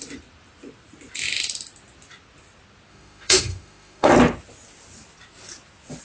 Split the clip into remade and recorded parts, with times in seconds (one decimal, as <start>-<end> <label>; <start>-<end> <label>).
0.0-2.9 recorded; 2.9-4.1 remade; 4.1-6.0 recorded